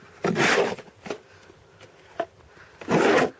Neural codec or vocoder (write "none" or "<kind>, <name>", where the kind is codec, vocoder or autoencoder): none